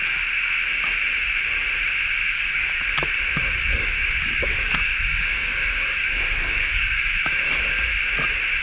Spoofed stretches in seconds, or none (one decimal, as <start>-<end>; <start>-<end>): 2.2-2.8; 3.7-7.6